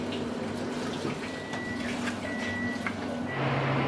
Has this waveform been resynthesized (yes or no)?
no